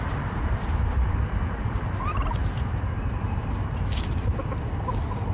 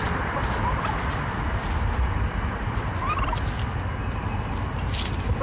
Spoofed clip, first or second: first